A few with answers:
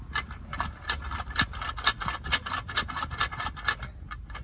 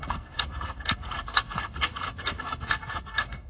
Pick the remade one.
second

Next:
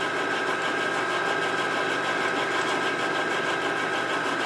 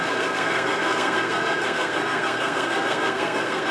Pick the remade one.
second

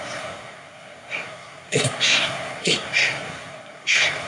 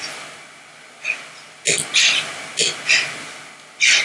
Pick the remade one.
first